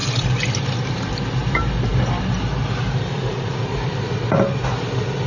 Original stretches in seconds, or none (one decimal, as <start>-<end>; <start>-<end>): 0.0-5.3